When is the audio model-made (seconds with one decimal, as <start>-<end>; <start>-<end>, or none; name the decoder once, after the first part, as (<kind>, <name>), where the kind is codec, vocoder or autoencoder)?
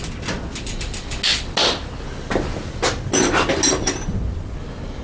none